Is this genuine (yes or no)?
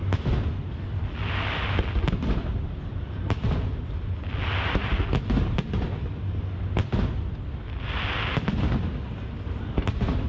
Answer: yes